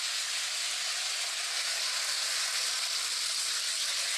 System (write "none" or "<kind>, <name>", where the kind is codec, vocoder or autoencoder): none